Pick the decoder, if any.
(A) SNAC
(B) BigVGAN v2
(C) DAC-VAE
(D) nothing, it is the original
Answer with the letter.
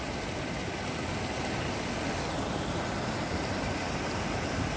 D